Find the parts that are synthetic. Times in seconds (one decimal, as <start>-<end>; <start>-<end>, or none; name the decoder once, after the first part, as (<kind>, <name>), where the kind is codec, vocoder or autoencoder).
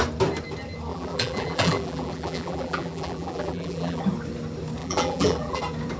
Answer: 0.9-4.0 (vocoder, BigVGAN v2); 4.8-5.6